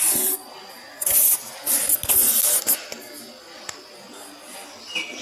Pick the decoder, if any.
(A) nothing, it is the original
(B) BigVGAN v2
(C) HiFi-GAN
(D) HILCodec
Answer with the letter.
A